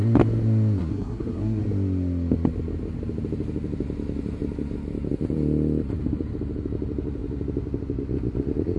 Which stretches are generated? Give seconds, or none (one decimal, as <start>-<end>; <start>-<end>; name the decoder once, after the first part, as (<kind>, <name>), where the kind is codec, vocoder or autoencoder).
0.8-1.6 (codec, SNAC)